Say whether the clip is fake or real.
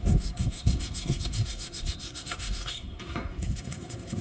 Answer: fake